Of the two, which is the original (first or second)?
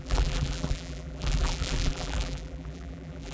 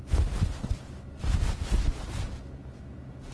second